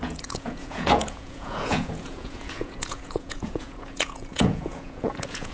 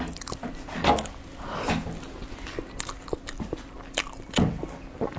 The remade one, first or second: first